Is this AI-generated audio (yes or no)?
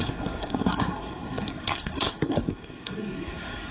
yes